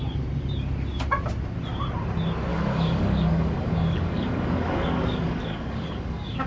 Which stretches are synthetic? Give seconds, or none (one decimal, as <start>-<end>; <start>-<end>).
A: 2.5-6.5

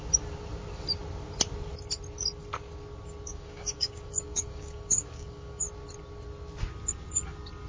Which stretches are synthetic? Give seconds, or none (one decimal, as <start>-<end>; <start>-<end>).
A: 3.3-5.6

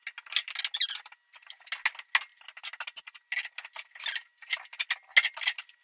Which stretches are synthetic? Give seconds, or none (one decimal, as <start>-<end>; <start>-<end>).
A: none

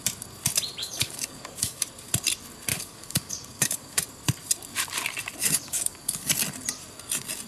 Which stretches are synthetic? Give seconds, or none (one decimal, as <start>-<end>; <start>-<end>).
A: 0.8-1.8; 2.7-4.0; 5.4-6.3

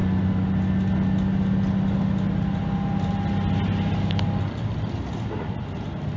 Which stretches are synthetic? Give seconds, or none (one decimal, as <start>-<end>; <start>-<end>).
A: none

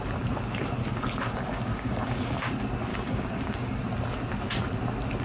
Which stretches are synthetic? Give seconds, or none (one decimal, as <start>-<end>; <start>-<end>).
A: 0.9-2.5; 2.9-3.8

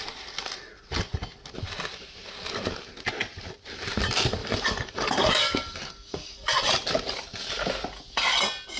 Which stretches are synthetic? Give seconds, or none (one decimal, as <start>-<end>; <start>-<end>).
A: 4.4-6.5